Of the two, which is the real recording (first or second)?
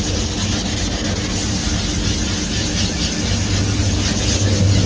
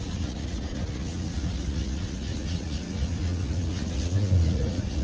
first